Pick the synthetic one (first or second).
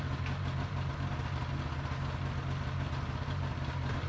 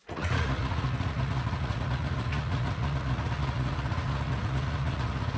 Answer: second